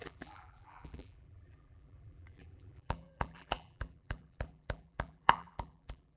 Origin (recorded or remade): remade